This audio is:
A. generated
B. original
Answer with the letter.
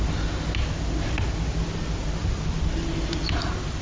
B